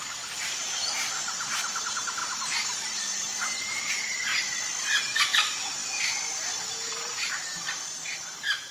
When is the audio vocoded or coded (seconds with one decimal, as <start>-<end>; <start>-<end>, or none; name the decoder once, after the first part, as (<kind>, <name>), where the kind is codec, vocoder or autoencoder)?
0.0-4.3 (vocoder, BigVGAN v2); 5.0-5.8; 6.9-8.7